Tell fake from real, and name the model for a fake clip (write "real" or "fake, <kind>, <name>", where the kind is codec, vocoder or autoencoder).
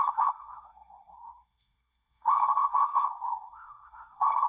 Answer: fake, codec, SNAC